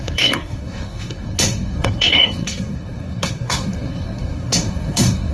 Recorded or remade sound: remade